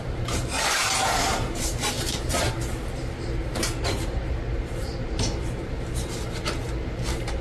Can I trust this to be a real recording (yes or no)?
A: no